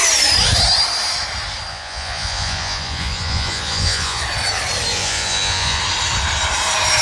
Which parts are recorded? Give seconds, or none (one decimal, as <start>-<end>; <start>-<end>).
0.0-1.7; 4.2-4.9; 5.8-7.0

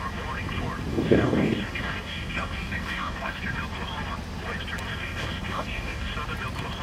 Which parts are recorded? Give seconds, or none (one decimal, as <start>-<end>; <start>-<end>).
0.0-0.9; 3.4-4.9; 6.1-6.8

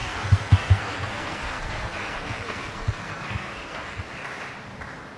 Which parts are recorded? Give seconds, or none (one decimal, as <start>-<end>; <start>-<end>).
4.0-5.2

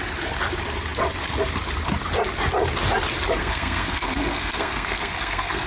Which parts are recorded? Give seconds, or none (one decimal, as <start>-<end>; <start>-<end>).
0.0-3.4